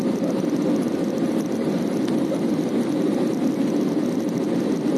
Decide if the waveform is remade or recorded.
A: recorded